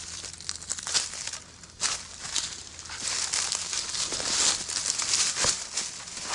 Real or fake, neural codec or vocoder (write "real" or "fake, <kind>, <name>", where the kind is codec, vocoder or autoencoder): real